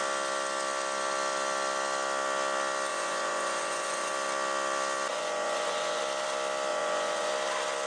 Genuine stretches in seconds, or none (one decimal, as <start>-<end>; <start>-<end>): 0.0-2.9; 4.1-5.1; 6.0-6.7; 7.3-7.9